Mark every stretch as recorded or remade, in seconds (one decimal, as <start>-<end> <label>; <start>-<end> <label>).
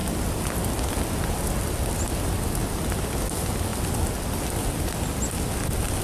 0.0-6.0 recorded